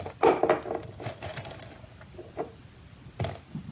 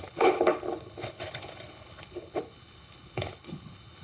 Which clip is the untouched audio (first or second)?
first